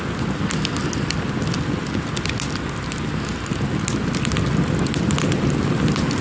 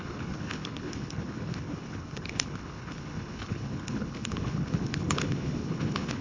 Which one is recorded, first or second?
first